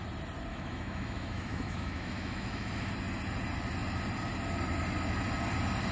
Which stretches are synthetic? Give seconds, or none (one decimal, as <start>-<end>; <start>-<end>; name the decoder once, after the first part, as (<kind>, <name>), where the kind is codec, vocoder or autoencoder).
0.5-2.9 (autoencoder, DAC-VAE)